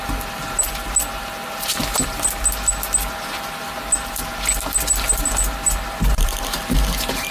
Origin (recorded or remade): recorded